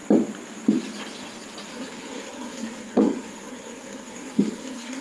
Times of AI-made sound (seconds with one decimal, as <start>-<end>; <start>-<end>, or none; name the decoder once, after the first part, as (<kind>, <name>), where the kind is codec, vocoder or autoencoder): 1.7-5.0 (codec, SNAC)